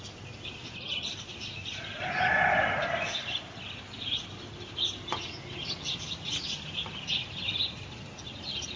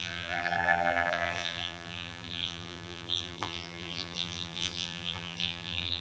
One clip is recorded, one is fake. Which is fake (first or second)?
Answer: second